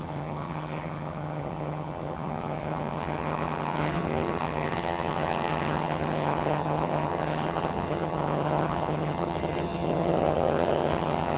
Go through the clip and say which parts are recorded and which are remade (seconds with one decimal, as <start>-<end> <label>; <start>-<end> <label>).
0.0-11.4 remade